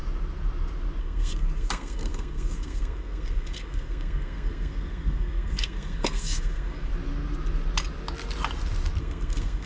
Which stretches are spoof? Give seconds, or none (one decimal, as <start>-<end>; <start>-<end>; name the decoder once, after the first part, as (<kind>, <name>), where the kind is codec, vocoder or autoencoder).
1.0-6.9 (codec, SNAC); 9.0-9.7